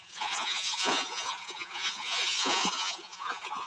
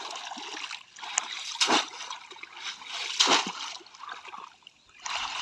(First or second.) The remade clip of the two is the first